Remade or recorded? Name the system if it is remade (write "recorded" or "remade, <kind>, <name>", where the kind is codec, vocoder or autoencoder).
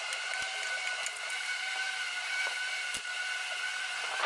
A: recorded